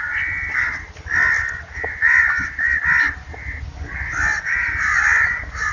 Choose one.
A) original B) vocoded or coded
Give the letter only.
A